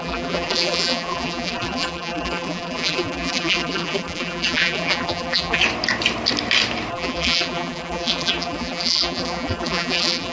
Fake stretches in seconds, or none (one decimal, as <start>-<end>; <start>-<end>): 0.0-5.6; 6.9-10.3